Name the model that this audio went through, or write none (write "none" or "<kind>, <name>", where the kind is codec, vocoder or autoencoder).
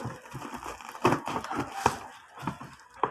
none